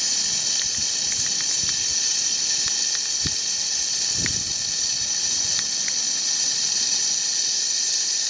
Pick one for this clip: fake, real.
real